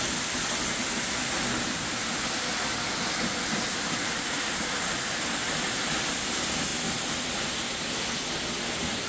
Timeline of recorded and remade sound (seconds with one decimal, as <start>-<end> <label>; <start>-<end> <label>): 0.0-9.1 recorded